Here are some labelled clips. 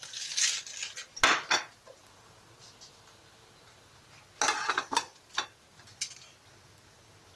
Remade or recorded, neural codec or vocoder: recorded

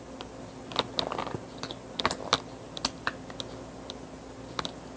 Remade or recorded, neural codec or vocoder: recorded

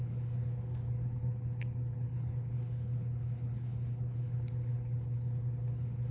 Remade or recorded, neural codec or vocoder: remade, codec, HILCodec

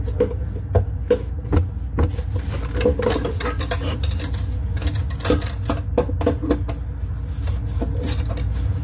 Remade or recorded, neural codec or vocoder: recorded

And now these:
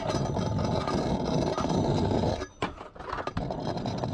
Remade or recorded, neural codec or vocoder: recorded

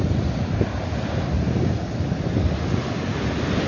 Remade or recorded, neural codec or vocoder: recorded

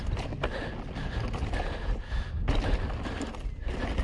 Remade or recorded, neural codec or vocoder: recorded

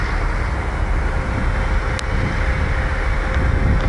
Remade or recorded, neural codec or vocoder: recorded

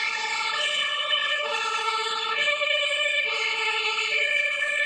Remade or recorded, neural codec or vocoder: remade, codec, HILCodec